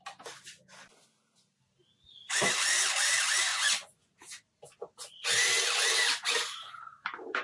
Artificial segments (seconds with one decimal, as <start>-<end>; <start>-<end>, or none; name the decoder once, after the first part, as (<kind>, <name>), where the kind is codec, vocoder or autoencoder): 3.5-4.1 (vocoder, Vocos)